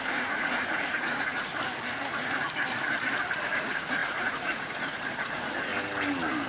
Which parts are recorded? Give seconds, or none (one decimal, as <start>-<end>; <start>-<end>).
1.5-3.4; 5.7-6.5